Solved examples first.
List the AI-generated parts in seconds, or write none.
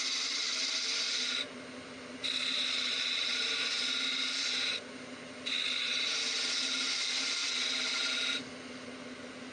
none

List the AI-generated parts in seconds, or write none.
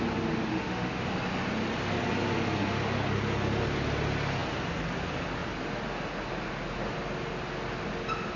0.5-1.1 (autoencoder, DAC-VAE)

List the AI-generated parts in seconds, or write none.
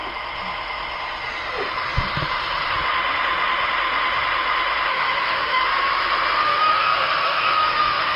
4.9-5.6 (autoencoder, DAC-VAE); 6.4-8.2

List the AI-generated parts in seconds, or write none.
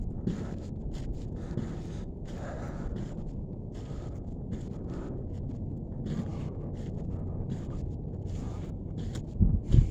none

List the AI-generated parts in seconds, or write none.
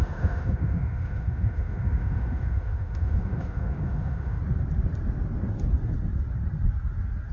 0.0-4.4 (autoencoder, DAC-VAE)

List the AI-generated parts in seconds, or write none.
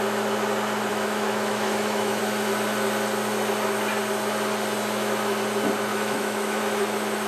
0.9-2.2 (autoencoder, DAC-VAE); 5.9-6.6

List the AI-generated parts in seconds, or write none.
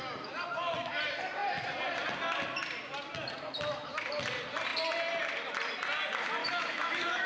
6.4-7.3 (autoencoder, DAC-VAE)